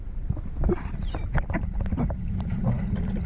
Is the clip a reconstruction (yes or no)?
no